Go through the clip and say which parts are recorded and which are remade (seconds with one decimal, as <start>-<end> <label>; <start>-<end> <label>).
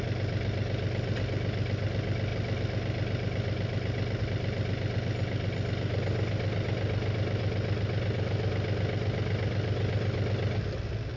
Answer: 0.0-11.2 recorded